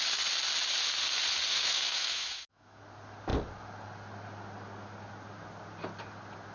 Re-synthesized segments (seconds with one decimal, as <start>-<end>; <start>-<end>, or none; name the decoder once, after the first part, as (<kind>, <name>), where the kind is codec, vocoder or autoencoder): 1.5-2.8 (autoencoder, DAC-VAE)